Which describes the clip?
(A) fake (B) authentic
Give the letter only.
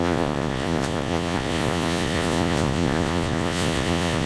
A